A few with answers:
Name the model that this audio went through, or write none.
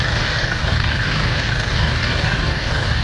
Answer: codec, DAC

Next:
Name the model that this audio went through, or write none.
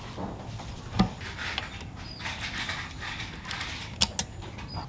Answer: none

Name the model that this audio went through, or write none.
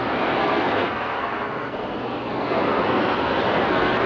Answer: codec, SNAC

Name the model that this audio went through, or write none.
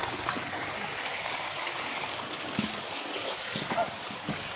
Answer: codec, DAC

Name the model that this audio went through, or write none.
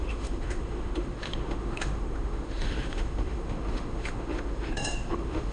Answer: autoencoder, DAC-VAE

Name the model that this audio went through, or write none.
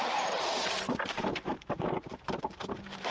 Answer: vocoder, BigVGAN v2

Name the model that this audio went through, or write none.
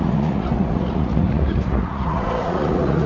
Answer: vocoder, Vocos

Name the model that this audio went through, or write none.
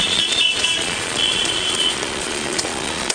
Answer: vocoder, Vocos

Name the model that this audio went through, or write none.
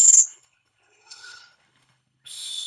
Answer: codec, HILCodec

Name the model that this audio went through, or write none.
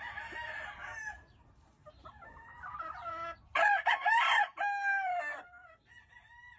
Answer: none